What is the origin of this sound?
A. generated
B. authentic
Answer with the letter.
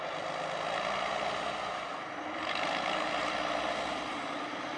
B